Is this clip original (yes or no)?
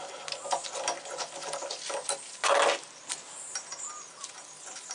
yes